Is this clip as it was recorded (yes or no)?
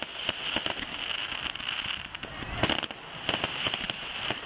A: yes